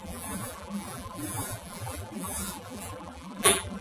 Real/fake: fake